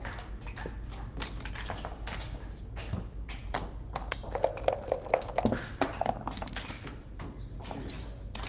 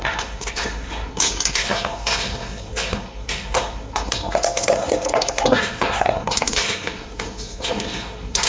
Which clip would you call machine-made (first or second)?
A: second